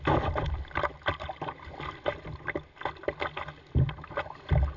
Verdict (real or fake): real